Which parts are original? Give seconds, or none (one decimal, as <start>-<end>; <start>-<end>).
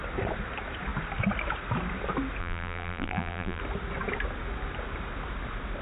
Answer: 0.0-2.4; 3.6-5.8